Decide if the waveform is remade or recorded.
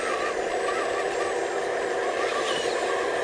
recorded